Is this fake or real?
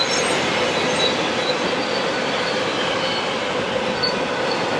real